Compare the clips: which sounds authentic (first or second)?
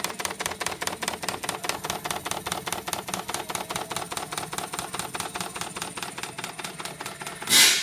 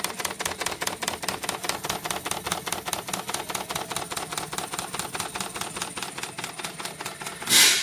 first